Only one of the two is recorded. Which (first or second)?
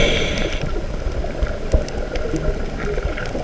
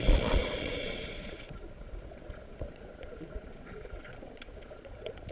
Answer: first